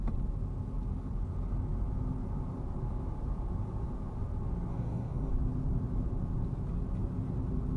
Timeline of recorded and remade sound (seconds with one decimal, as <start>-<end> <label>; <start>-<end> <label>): 0.0-4.7 recorded; 4.7-5.3 remade; 5.3-7.8 recorded